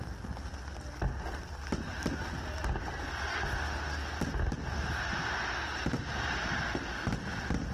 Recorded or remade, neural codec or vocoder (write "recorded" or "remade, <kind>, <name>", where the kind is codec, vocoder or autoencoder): recorded